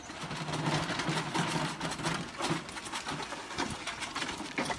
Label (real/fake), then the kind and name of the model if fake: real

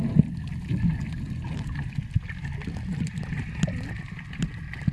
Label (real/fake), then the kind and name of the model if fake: real